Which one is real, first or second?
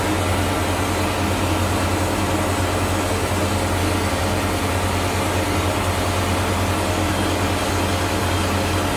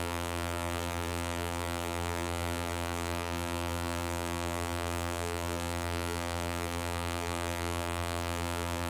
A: first